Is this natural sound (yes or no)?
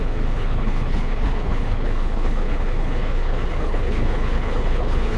no